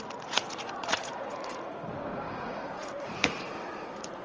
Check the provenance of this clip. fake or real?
fake